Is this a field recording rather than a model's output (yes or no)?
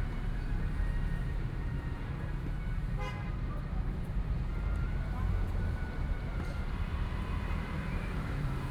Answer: no